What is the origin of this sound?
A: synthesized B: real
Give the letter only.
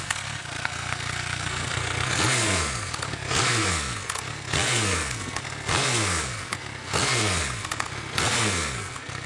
A